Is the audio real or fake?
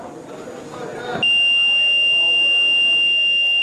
real